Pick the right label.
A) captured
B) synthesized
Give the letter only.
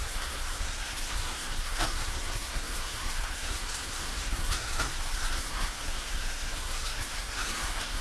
B